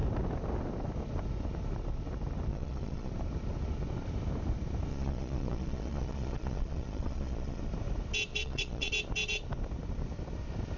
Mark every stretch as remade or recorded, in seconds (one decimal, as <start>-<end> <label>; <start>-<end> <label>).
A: 0.0-2.5 recorded; 2.5-3.1 remade; 3.1-4.9 recorded; 4.9-7.6 remade; 7.6-8.3 recorded; 8.3-8.9 remade; 8.9-10.8 recorded